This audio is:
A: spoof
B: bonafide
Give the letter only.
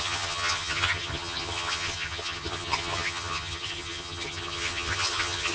A